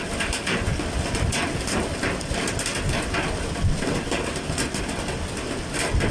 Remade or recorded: recorded